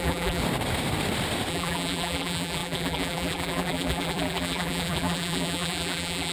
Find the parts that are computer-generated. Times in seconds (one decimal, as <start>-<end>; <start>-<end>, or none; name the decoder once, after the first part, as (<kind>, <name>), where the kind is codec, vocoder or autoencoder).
0.0-0.4 (vocoder, BigVGAN v2); 1.5-6.3